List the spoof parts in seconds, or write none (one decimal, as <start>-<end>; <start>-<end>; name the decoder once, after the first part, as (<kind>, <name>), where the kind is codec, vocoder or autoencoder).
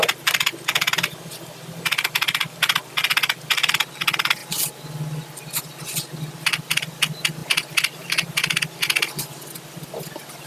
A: none